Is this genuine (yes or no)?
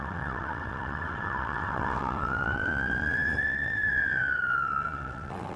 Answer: no